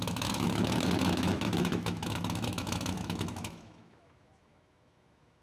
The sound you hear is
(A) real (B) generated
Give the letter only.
B